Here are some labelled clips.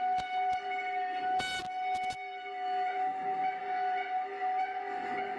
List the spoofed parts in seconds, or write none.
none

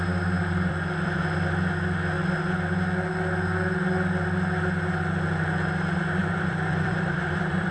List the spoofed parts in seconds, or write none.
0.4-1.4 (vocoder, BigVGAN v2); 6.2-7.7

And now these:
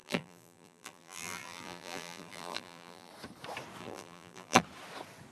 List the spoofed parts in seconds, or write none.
0.0-3.1 (vocoder, BigVGAN v2); 3.8-4.6

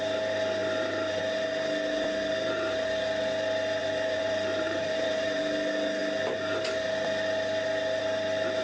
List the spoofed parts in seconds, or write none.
0.6-1.2 (vocoder, BigVGAN v2); 3.8-5.4